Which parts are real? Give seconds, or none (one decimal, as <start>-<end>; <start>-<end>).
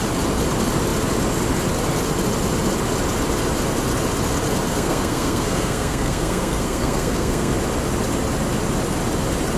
0.0-4.7; 7.5-9.6